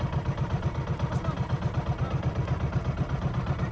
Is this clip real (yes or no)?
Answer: yes